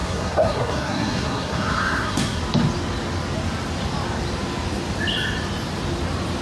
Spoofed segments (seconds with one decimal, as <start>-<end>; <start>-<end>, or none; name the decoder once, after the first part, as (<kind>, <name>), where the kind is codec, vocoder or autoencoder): 0.0-2.4 (codec, SNAC)